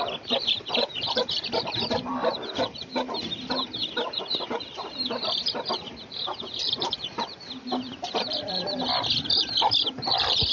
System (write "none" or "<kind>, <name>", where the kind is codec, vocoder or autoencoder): vocoder, BigVGAN v2